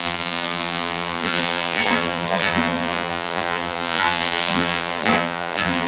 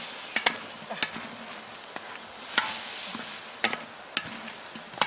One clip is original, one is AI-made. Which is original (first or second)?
second